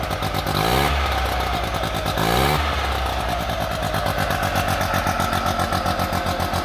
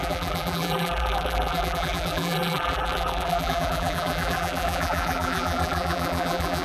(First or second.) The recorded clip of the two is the first